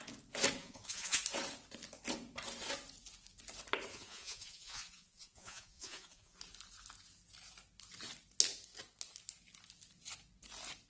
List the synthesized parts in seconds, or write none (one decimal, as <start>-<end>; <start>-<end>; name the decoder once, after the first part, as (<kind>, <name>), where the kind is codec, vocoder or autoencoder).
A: 0.6-1.2 (vocoder, Vocos); 3.9-6.4